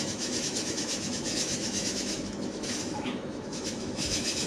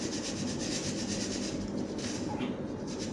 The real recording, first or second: second